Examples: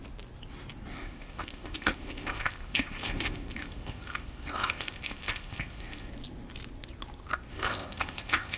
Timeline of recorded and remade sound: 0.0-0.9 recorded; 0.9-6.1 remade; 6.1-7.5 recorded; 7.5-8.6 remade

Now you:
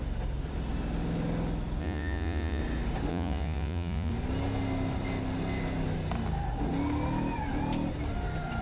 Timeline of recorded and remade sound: 0.0-1.8 recorded; 1.8-2.6 remade; 2.6-3.1 recorded; 3.1-4.1 remade; 4.1-8.6 recorded

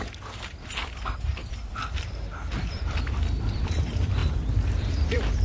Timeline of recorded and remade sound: 0.0-4.2 remade; 4.2-4.8 recorded; 4.8-5.4 remade